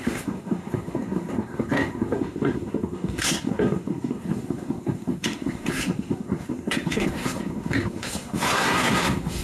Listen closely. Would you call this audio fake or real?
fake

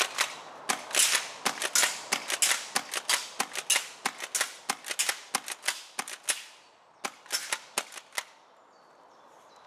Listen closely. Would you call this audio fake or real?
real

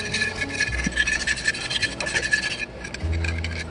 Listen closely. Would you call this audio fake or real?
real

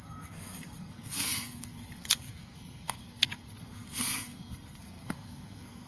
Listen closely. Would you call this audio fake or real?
fake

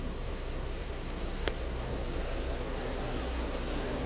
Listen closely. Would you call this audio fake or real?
fake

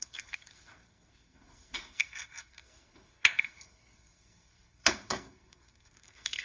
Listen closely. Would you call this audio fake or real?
fake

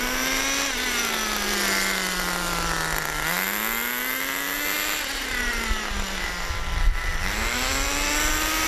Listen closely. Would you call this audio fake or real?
real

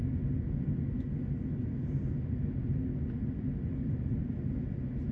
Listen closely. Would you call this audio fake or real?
real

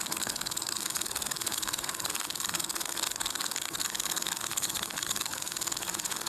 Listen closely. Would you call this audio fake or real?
fake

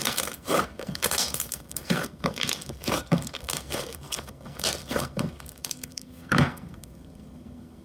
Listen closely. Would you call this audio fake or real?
fake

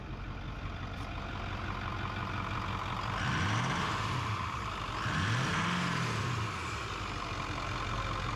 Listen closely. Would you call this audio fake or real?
real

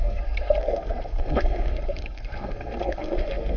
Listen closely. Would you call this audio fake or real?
fake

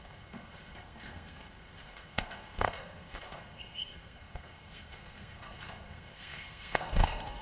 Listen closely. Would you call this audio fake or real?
fake